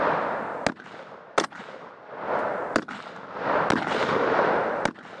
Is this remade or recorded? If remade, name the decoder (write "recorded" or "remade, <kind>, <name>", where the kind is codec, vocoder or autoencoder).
recorded